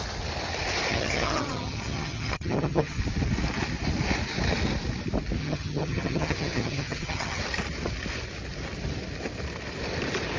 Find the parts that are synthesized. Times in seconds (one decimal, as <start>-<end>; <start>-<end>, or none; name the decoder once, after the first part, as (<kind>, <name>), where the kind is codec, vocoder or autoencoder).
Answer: 0.9-3.0 (vocoder, HiFi-GAN); 5.4-7.4